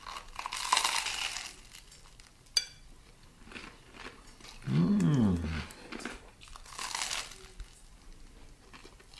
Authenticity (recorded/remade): recorded